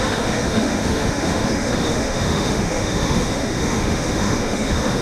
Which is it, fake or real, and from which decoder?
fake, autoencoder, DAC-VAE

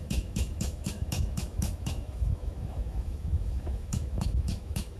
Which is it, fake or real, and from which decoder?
fake, autoencoder, DAC-VAE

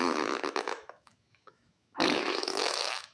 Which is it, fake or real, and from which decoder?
fake, autoencoder, DAC-VAE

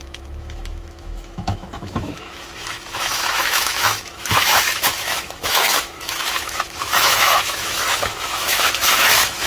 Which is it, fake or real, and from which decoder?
fake, autoencoder, DAC-VAE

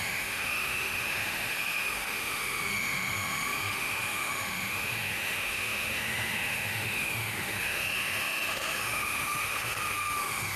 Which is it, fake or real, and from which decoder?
fake, autoencoder, DAC-VAE